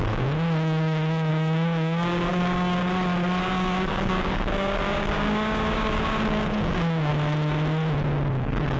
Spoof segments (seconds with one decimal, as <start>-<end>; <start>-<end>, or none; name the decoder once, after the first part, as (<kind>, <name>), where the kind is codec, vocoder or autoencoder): 0.0-2.8 (codec, DAC); 3.4-7.1; 8.3-8.8